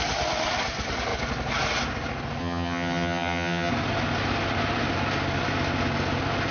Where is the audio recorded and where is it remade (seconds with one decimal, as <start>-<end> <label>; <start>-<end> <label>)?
0.0-2.4 recorded; 2.4-3.7 remade; 3.7-6.5 recorded